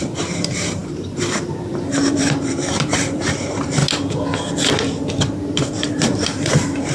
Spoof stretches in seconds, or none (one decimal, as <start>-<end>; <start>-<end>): 0.0-3.8; 5.2-6.9

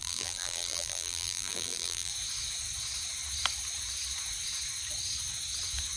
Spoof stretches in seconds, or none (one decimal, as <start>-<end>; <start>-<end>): 0.0-2.1

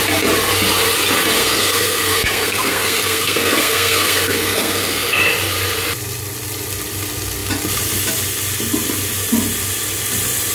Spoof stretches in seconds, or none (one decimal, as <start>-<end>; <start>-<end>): 1.4-5.2

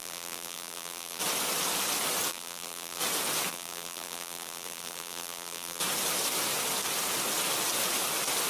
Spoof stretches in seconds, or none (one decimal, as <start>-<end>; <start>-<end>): 0.0-1.2; 2.3-3.0; 3.5-5.8

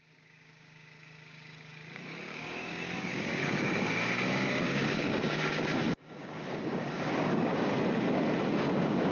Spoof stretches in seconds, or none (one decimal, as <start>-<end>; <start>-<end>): 0.0-7.7; 8.5-9.1

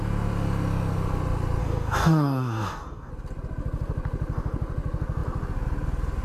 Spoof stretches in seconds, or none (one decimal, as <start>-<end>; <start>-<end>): 1.6-3.1